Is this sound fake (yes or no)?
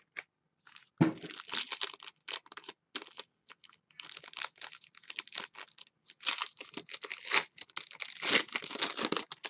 no